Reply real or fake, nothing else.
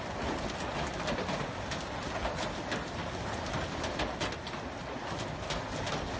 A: real